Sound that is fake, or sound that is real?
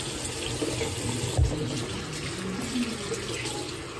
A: real